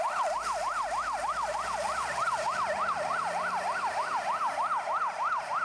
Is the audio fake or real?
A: real